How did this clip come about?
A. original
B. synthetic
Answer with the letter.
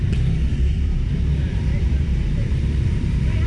B